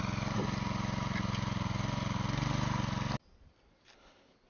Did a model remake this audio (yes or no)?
no